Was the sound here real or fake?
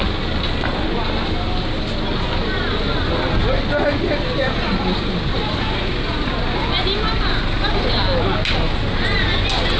real